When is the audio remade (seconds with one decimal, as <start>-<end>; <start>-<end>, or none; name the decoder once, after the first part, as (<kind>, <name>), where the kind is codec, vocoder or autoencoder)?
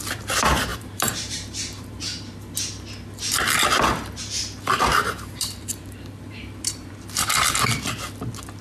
0.7-2.0 (vocoder, BigVGAN v2); 4.9-6.9